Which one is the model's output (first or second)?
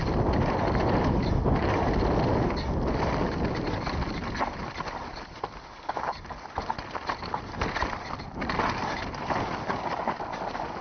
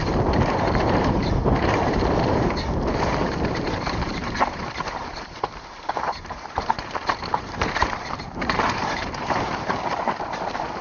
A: second